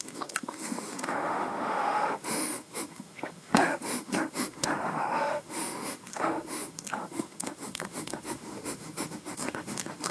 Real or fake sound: fake